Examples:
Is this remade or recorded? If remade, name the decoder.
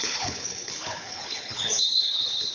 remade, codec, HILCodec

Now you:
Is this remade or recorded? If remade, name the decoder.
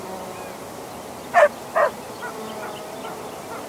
recorded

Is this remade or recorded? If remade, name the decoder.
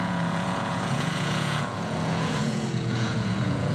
remade, vocoder, Vocos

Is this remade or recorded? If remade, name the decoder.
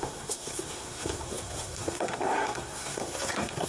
remade, codec, SNAC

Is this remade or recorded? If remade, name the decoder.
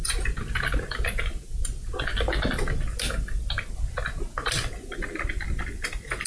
recorded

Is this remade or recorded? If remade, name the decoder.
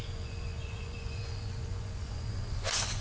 remade, vocoder, Vocos